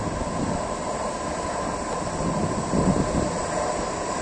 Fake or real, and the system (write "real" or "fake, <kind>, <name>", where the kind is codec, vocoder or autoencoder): real